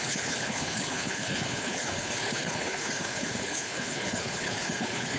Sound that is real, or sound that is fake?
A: fake